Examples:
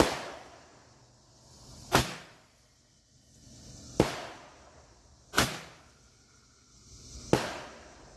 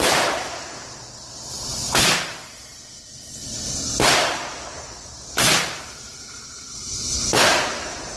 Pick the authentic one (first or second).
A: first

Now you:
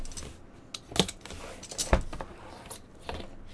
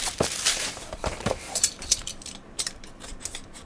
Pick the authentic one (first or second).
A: first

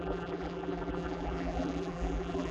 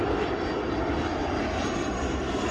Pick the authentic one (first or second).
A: second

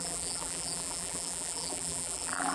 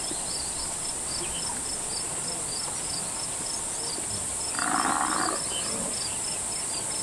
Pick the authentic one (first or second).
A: second